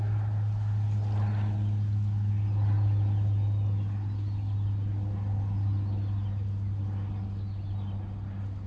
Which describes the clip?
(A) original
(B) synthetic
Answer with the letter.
A